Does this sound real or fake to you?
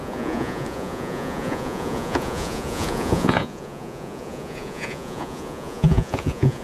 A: fake